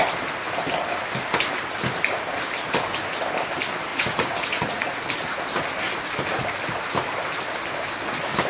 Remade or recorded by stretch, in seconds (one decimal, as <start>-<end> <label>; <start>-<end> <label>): 0.0-3.9 recorded; 3.9-5.0 remade; 5.0-8.5 recorded